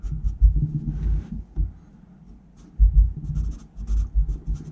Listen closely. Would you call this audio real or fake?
real